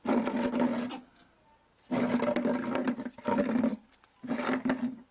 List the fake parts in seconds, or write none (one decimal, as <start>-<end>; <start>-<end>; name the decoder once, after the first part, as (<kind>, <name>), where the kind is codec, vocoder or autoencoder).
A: none